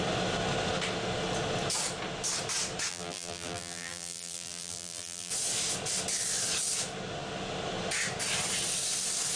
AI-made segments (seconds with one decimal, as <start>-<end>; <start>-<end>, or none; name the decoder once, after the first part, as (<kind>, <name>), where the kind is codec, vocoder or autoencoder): 2.9-5.3 (vocoder, BigVGAN v2)